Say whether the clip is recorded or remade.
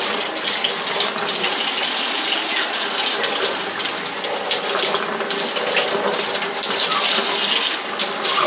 recorded